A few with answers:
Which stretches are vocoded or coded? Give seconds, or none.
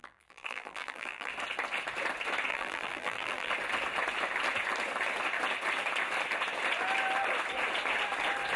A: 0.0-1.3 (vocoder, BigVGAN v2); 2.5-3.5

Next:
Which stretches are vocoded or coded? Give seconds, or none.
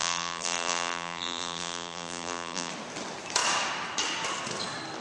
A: 0.0-2.7 (vocoder, BigVGAN v2)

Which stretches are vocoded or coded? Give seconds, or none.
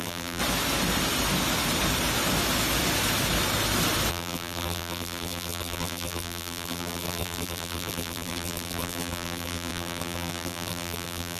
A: 0.0-0.4 (vocoder, BigVGAN v2); 4.1-11.4